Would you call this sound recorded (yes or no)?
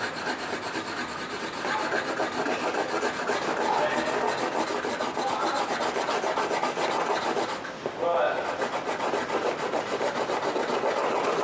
yes